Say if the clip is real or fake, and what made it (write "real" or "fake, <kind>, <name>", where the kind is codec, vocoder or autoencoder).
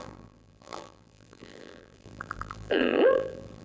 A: fake, vocoder, BigVGAN v2